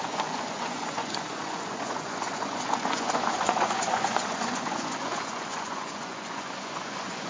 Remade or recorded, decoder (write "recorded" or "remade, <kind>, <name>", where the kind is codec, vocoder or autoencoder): remade, vocoder, Vocos